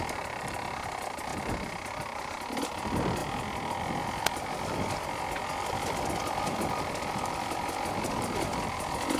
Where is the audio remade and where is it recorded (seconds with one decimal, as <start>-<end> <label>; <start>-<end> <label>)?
0.0-9.2 recorded